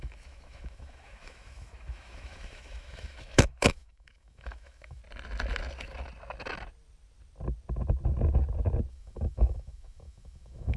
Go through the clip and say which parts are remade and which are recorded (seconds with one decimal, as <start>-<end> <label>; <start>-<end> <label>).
0.0-5.0 remade; 5.0-8.9 recorded; 8.9-10.8 remade

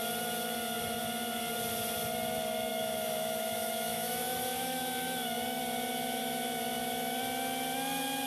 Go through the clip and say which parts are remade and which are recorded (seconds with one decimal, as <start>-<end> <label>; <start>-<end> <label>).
0.0-2.7 recorded; 2.7-5.6 remade; 5.6-6.2 recorded; 6.2-7.2 remade; 7.2-8.3 recorded

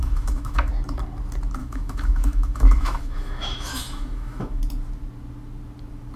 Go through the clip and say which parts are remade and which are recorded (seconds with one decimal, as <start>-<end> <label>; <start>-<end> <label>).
0.0-0.7 remade; 0.7-1.6 recorded; 1.6-4.6 remade; 4.6-6.2 recorded

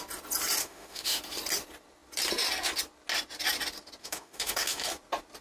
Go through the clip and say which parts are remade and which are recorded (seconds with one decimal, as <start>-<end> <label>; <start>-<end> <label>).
0.0-0.6 recorded; 0.6-1.2 remade; 1.2-4.0 recorded; 4.0-4.9 remade; 4.9-5.4 recorded